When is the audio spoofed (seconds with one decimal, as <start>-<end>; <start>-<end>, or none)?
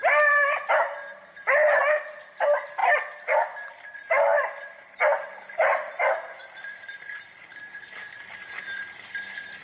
none